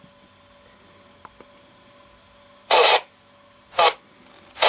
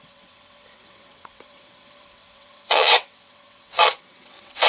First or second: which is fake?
second